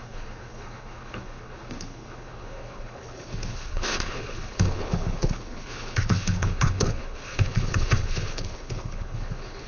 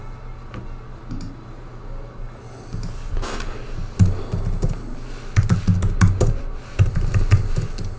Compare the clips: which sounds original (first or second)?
second